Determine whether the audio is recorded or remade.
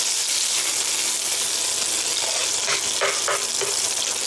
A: recorded